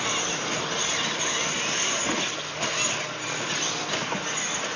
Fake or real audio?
real